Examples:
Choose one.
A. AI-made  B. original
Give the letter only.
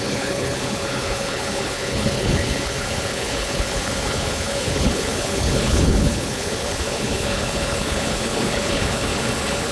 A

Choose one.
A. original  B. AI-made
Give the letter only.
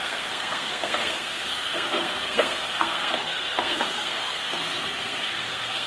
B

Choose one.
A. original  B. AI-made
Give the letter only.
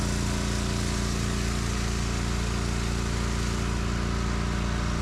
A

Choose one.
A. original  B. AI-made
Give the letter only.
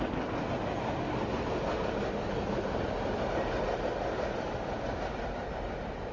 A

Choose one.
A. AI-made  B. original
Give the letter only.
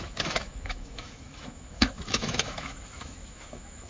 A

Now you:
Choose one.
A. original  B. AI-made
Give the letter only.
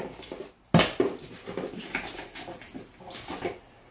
A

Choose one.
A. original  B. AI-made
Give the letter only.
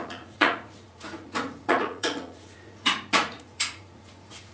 B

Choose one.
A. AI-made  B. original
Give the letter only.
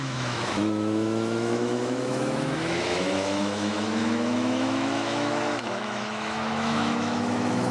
A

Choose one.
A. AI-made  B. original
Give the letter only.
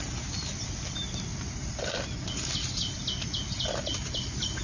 B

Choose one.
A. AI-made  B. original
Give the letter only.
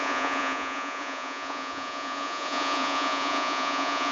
A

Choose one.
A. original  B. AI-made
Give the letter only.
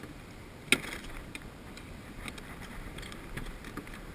A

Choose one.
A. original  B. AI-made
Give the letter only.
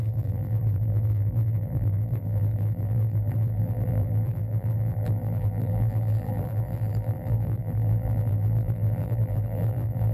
B